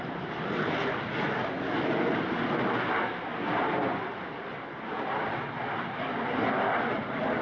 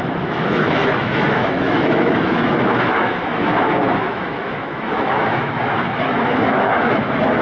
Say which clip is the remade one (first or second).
second